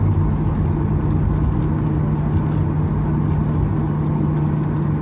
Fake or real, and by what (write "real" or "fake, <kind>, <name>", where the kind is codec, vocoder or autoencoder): real